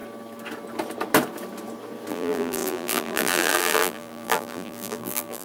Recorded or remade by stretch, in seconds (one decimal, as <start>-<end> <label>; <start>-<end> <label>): 0.0-2.1 recorded; 2.1-5.4 remade